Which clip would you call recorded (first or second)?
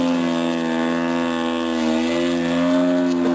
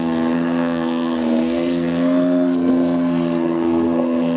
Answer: first